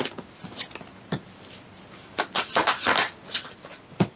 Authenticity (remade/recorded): recorded